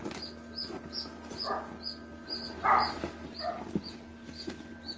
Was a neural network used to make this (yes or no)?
no